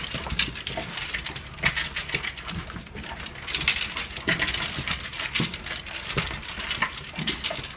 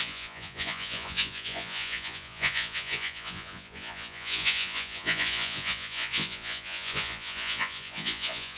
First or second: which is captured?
first